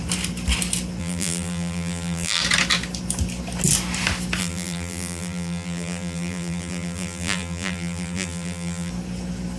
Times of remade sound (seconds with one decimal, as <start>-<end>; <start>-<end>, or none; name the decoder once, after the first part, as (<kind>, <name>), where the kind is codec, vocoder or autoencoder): 1.0-2.4 (vocoder, BigVGAN v2); 4.4-8.9